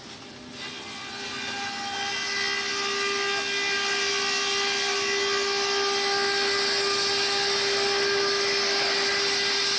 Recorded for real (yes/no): yes